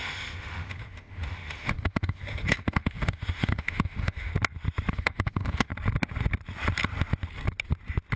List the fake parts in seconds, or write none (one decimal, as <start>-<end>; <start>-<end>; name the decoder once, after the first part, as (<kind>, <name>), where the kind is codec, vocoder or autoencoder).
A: 0.0-4.3 (autoencoder, DAC-VAE); 4.9-5.7